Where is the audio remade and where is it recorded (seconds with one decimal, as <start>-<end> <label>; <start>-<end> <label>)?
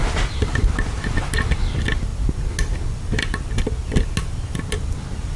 0.0-5.4 recorded